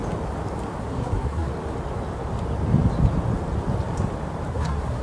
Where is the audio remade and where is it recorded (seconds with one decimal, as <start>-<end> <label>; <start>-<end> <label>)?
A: 0.0-0.8 recorded; 0.8-1.5 remade; 1.5-4.5 recorded; 4.5-5.0 remade